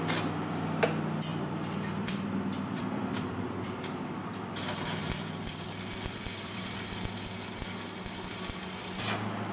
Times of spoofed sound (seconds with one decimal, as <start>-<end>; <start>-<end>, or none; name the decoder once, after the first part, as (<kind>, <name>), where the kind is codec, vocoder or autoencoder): 1.3-4.5 (vocoder, BigVGAN v2); 5.0-6.8